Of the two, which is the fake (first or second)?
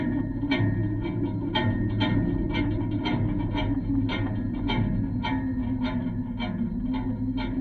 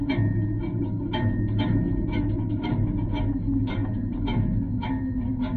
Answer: second